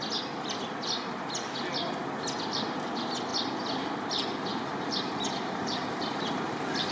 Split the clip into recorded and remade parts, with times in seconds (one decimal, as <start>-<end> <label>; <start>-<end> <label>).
0.0-4.5 recorded; 4.5-6.5 remade; 6.5-6.9 recorded